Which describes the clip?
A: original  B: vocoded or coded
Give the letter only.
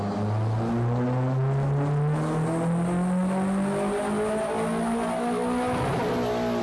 A